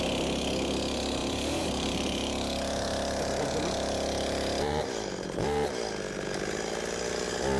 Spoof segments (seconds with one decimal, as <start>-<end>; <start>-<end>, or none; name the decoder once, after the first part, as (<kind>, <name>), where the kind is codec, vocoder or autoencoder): 1.2-5.8 (vocoder, BigVGAN v2)